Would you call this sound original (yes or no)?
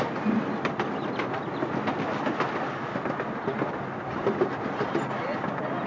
yes